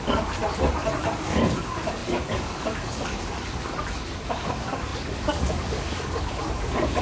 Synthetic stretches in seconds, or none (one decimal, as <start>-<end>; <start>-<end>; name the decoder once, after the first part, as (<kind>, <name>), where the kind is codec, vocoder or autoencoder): 0.0-0.4 (codec, DAC); 1.0-7.0